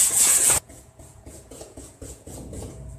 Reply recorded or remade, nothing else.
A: remade